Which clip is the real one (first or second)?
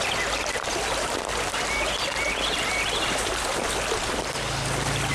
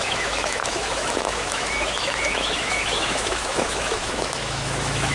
first